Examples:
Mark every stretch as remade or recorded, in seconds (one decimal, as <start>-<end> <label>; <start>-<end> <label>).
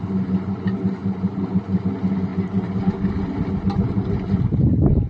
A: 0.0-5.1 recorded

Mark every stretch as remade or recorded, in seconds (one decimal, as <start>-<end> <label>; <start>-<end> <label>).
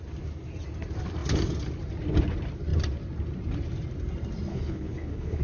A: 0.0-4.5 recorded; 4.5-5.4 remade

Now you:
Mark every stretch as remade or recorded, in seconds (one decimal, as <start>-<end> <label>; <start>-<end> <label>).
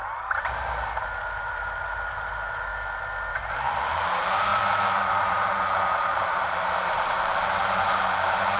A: 0.0-1.4 recorded; 1.4-2.7 remade; 2.7-3.3 recorded; 3.3-8.6 remade